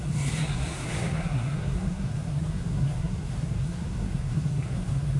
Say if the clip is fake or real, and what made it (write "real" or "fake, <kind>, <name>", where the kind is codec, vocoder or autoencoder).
fake, codec, SNAC